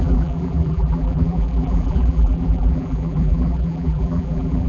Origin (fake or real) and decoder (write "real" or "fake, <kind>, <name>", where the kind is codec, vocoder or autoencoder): fake, vocoder, BigVGAN v2